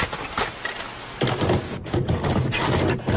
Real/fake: real